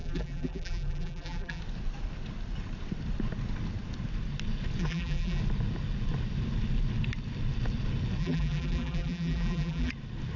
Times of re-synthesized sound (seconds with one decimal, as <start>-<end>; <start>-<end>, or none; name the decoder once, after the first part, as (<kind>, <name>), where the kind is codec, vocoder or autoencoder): 0.0-1.6 (vocoder, BigVGAN v2); 4.8-5.4; 8.2-9.9